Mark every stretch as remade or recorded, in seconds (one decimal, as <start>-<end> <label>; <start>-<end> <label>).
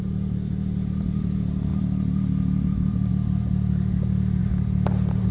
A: 0.0-5.3 recorded